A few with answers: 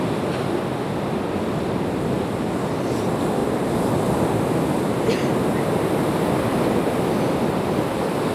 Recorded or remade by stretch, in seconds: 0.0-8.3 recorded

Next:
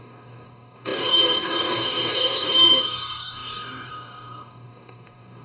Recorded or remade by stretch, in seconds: 0.0-5.4 remade

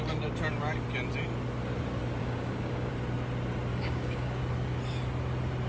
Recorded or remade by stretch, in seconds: 0.0-2.2 recorded; 2.2-2.9 remade; 2.9-3.7 recorded; 3.7-4.4 remade; 4.4-5.7 recorded

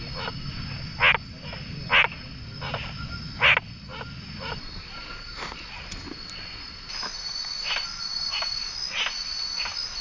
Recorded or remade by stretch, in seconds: 0.0-10.0 recorded

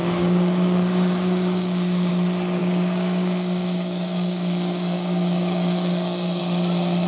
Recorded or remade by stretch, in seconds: 0.0-2.1 remade; 2.1-2.6 recorded; 2.6-6.4 remade; 6.4-7.1 recorded

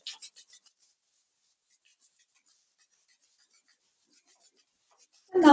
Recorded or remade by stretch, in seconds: 0.0-5.5 recorded

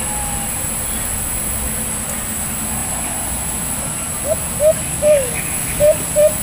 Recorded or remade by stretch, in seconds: 0.0-4.9 recorded; 4.9-6.0 remade; 6.0-6.4 recorded